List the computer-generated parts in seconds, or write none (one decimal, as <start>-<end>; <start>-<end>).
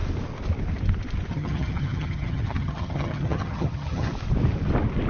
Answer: 1.3-4.1